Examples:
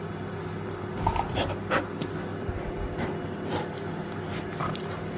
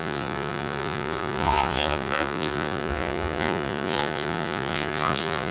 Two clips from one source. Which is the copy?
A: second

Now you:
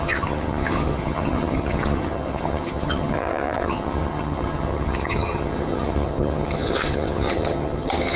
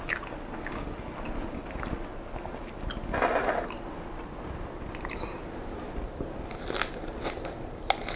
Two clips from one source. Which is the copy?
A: first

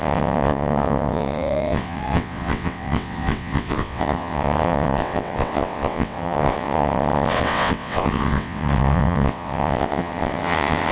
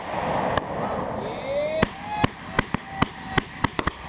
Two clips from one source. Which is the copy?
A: first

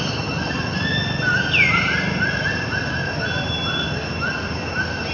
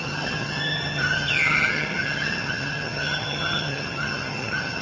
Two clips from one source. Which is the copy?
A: second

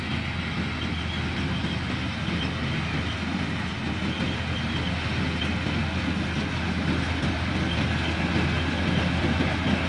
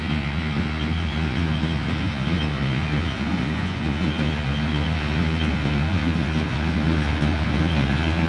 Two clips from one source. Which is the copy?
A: second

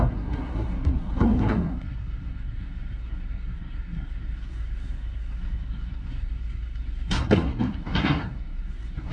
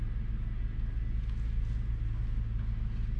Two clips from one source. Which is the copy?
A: first